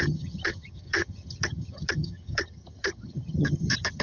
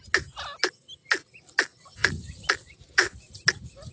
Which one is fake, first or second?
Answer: first